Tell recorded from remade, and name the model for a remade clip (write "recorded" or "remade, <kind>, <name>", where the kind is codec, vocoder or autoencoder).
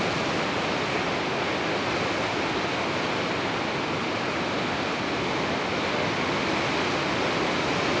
recorded